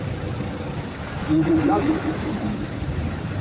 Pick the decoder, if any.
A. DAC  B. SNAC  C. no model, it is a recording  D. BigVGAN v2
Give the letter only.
D